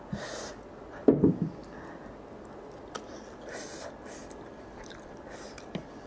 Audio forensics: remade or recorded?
recorded